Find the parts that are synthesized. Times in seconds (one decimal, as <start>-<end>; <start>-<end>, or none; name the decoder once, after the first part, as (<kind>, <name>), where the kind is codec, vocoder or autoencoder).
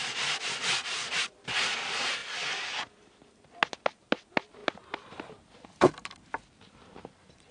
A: none